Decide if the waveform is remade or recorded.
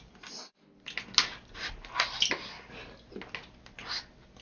recorded